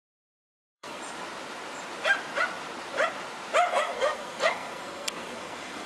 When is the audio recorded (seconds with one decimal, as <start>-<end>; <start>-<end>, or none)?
1.0-3.7